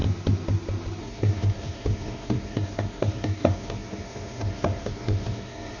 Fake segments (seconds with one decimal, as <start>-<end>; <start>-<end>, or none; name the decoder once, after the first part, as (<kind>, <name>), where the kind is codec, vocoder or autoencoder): 1.0-5.8 (codec, SNAC)